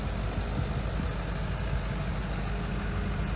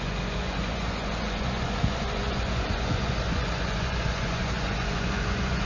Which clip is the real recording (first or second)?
first